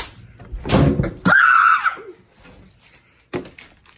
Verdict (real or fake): real